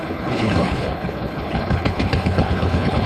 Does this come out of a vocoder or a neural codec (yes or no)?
yes